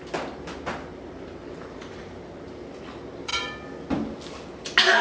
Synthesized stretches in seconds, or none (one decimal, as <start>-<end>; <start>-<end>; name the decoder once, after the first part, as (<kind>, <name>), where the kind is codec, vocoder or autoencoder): 0.9-2.7 (vocoder, BigVGAN v2)